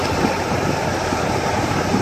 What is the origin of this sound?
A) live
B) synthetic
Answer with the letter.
B